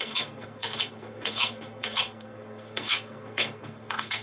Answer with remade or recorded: remade